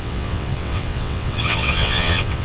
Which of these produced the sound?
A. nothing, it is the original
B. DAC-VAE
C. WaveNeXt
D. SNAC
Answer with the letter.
C